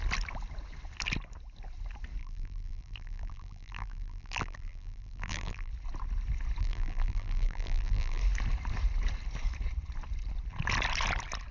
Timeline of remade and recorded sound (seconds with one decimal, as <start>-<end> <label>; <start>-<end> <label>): 0.0-2.2 recorded; 2.2-5.7 remade; 5.7-6.6 recorded; 6.6-8.2 remade; 8.2-11.5 recorded